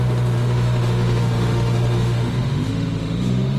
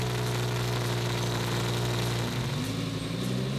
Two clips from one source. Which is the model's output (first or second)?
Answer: first